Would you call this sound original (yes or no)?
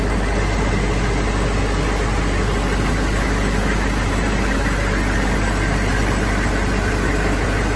yes